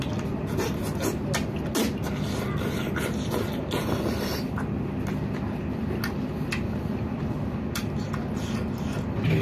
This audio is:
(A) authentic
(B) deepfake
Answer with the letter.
A